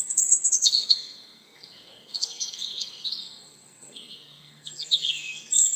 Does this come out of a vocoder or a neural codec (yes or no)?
yes